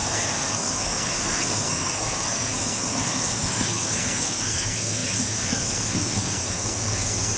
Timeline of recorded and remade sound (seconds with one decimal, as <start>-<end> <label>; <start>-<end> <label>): 0.0-7.4 remade